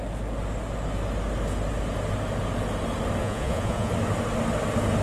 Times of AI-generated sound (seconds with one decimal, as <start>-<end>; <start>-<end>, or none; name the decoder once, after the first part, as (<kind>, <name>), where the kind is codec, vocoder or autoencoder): 3.2-3.9 (vocoder, Vocos)